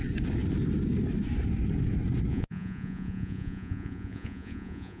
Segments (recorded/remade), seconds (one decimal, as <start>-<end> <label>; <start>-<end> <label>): 0.0-2.3 recorded; 2.3-5.0 remade